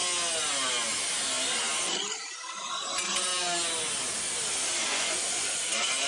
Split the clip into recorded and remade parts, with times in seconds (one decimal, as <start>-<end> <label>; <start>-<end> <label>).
0.0-4.9 recorded; 4.9-5.5 remade; 5.5-6.1 recorded